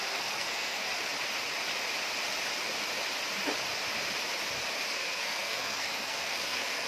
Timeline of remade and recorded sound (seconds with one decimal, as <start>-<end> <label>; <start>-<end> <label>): 0.0-0.8 remade; 0.8-4.9 recorded; 4.9-6.9 remade